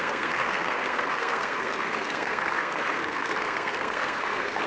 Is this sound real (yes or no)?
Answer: no